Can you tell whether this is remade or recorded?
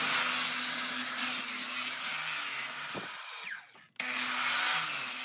recorded